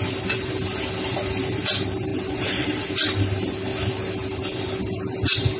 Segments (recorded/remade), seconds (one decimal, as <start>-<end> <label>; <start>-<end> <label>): 0.0-2.1 recorded; 2.1-2.9 remade; 2.9-5.6 recorded